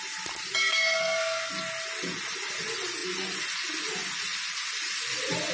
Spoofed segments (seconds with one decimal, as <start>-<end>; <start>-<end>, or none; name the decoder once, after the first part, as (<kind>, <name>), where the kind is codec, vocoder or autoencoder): 0.6-1.5 (codec, SNAC)

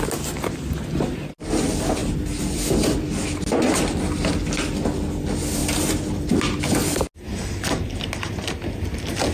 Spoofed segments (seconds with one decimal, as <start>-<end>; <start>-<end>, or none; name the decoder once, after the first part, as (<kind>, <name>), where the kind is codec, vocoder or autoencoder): none

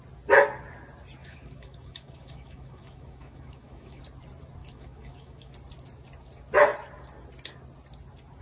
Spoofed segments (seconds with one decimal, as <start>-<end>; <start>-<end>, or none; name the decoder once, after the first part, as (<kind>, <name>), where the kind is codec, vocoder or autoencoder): 1.2-4.0 (autoencoder, DAC-VAE); 4.6-5.5

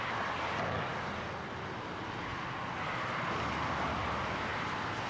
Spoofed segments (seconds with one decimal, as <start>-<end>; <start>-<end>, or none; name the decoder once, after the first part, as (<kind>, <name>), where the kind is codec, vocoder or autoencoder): none

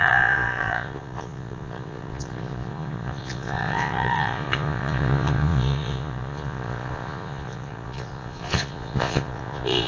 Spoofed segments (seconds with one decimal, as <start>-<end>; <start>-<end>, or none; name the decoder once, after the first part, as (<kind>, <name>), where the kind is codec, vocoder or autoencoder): 0.0-9.9 (vocoder, Vocos)

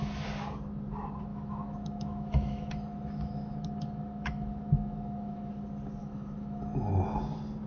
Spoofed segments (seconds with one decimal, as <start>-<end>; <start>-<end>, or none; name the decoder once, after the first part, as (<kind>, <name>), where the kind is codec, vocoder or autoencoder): 1.3-5.5 (autoencoder, DAC-VAE); 6.0-6.9

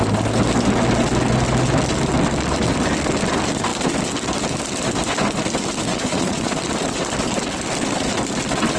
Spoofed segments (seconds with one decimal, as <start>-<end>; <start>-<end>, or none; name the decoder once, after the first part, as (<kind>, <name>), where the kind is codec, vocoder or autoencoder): 5.9-6.5 (vocoder, Vocos)